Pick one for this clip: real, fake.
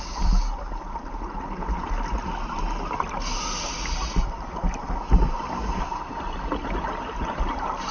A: real